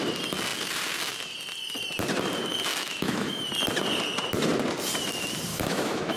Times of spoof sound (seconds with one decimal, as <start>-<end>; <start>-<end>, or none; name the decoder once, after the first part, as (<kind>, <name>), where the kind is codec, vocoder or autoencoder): 2.7-3.4 (autoencoder, DAC-VAE); 5.5-6.2